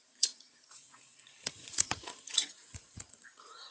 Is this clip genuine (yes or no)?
no